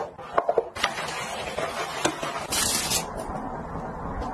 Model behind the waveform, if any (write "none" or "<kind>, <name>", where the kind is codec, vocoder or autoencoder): none